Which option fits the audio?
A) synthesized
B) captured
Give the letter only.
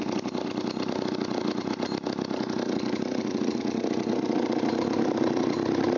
B